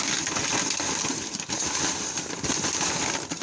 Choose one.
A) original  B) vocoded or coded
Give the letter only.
A